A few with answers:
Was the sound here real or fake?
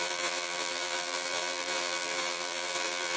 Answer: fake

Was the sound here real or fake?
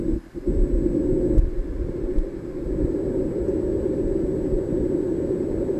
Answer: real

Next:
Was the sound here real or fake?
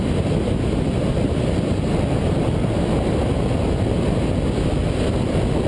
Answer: real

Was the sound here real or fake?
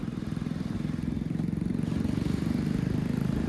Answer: fake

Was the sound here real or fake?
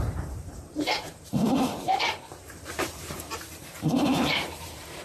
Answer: fake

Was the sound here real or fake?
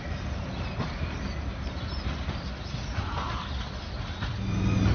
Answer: real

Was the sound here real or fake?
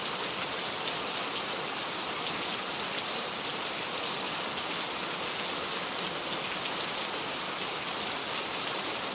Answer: real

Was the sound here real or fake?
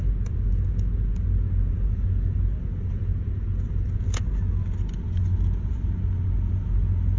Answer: real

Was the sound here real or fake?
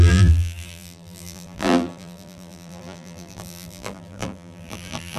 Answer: fake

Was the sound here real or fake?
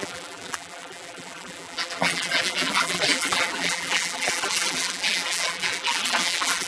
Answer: fake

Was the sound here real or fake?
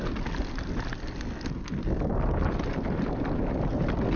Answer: real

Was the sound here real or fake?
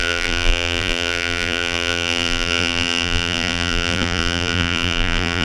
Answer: fake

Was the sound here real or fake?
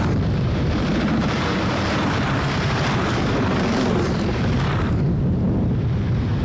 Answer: fake